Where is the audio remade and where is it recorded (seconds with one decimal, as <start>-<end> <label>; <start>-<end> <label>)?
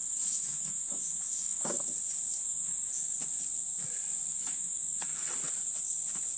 0.0-1.8 remade; 1.8-2.4 recorded; 2.4-2.9 remade; 2.9-4.3 recorded; 4.3-5.2 remade; 5.2-6.4 recorded